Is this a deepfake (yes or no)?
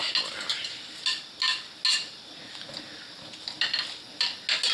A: no